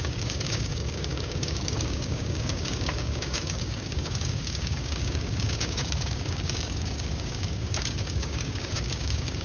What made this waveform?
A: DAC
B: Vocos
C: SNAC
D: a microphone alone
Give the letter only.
A